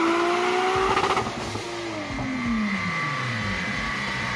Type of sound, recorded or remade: recorded